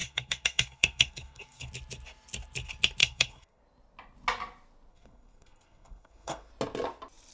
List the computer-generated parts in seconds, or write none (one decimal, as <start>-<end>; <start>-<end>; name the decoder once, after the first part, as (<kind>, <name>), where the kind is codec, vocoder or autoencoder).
0.0-1.7 (codec, SNAC); 3.0-3.6; 4.9-6.5